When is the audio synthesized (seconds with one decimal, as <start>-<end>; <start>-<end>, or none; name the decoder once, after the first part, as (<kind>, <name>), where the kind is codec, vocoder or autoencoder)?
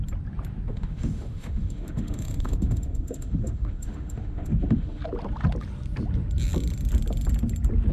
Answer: 0.7-5.0 (autoencoder, DAC-VAE)